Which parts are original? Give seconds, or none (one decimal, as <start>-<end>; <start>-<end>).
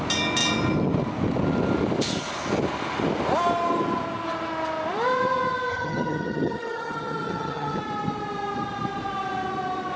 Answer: 0.0-5.7; 7.8-10.0